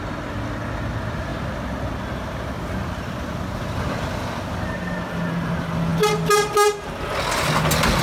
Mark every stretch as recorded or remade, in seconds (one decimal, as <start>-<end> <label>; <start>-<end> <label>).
0.0-8.0 recorded